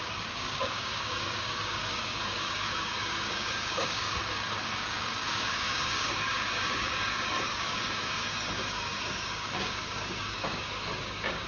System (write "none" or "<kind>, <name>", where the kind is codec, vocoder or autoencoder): codec, DAC